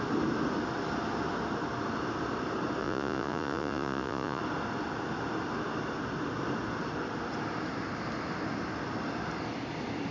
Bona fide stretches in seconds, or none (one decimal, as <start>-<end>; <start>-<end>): 0.0-2.8; 4.4-10.1